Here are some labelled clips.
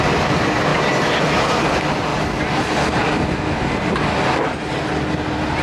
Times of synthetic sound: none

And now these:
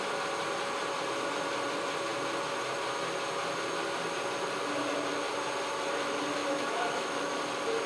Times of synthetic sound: 6.4-7.4 (autoencoder, DAC-VAE)

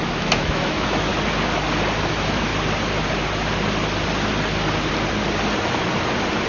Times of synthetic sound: 0.0-1.1 (autoencoder, DAC-VAE); 2.1-2.5

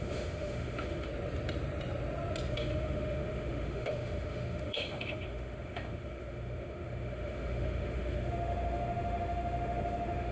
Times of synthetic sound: 0.0-1.1 (autoencoder, DAC-VAE); 2.5-10.3

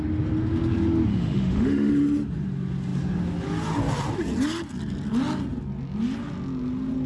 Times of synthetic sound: 1.1-1.9 (autoencoder, DAC-VAE)

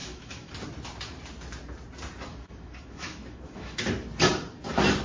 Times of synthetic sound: 0.0-0.5 (autoencoder, DAC-VAE); 2.3-3.8